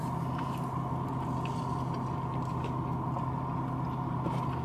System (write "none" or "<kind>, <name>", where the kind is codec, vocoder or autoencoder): none